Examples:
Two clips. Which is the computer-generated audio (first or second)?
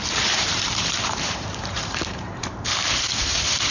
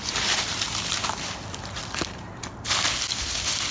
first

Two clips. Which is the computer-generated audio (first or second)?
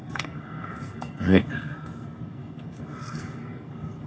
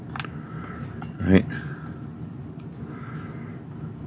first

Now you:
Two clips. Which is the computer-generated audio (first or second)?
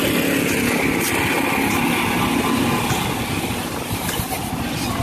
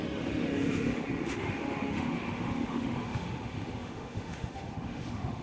second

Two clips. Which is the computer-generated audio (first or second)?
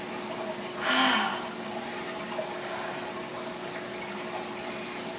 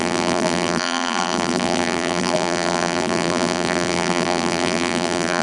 second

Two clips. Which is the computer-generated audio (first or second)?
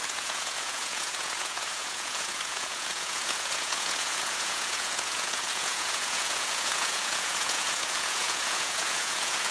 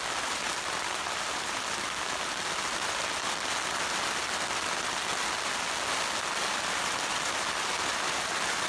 first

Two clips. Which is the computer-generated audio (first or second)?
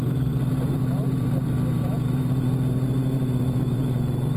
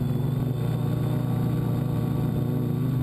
first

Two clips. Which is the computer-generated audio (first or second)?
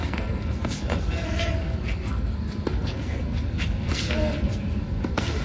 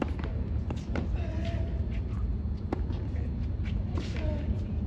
first